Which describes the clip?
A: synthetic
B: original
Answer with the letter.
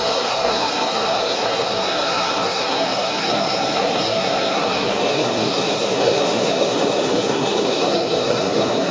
A